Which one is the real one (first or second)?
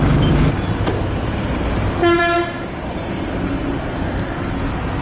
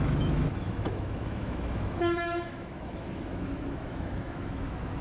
first